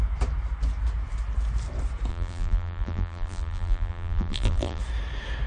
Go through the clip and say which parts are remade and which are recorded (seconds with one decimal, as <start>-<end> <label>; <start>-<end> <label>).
0.0-2.1 recorded; 2.1-4.8 remade; 4.8-5.5 recorded